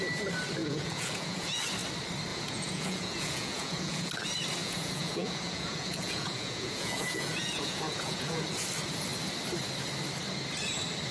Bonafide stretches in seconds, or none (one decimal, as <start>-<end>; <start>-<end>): 0.0-0.6; 1.6-2.3; 4.1-4.6; 8.4-11.1